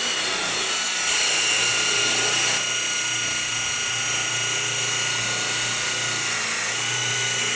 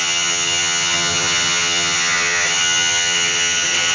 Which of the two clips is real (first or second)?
first